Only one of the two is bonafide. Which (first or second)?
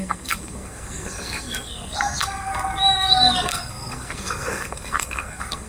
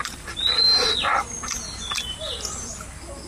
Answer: second